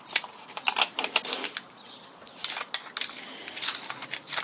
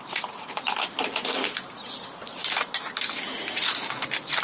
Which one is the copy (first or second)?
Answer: second